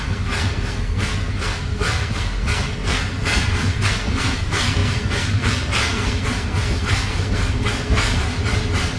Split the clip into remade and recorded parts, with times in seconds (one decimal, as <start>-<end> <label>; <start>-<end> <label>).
0.0-8.3 remade; 8.3-9.0 recorded